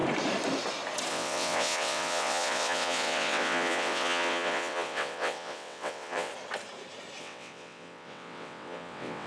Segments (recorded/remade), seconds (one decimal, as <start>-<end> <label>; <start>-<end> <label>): 0.0-1.1 recorded; 1.1-6.3 remade; 6.3-7.2 recorded; 7.2-9.3 remade